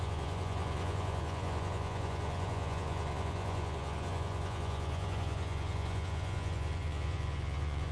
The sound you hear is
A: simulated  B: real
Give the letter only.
A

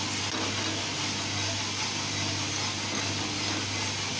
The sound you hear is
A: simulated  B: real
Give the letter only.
A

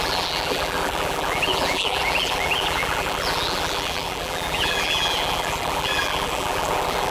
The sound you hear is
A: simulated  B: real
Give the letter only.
A